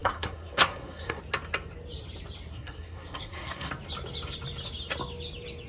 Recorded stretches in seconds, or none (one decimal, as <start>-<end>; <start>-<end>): 1.2-2.5; 3.7-5.7